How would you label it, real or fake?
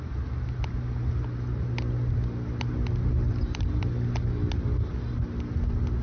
real